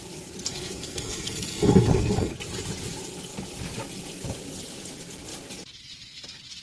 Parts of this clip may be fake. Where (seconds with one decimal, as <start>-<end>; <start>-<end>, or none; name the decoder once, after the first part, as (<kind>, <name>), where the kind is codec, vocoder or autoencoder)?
0.5-2.3 (codec, SNAC)